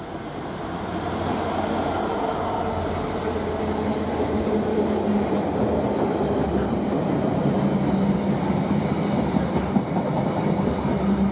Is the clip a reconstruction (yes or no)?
no